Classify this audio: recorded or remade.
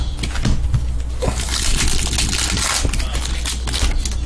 recorded